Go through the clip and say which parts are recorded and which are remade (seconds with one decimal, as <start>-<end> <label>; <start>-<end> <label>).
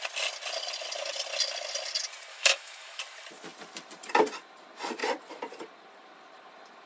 0.0-2.3 recorded; 2.3-3.0 remade; 3.0-6.9 recorded